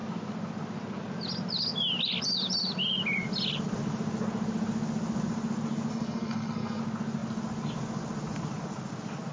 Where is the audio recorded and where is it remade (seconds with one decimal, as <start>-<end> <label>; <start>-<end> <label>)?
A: 0.0-5.9 recorded; 5.9-6.8 remade; 6.8-9.3 recorded